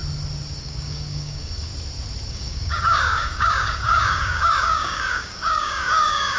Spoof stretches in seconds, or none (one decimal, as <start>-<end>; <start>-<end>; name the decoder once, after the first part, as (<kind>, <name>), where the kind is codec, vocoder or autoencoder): 0.6-1.7 (codec, DAC); 2.3-6.4